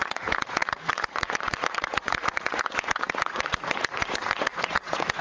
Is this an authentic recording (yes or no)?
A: no